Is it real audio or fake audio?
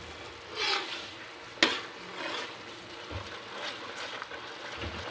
real